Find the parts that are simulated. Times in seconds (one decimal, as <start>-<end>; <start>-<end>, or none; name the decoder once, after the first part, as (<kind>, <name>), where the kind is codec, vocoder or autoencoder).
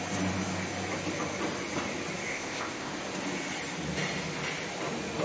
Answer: 2.3-2.9 (codec, ZipCodec)